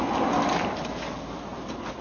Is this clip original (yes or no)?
yes